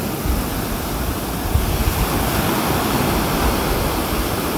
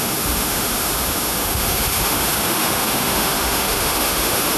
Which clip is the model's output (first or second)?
second